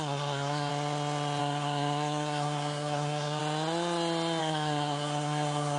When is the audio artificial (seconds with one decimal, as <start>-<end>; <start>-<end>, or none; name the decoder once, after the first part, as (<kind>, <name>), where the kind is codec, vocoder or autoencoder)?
0.0-0.7 (codec, SNAC); 1.4-3.4; 4.4-5.8